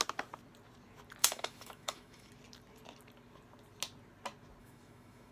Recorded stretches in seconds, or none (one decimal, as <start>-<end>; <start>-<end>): 0.0-1.2; 2.3-4.6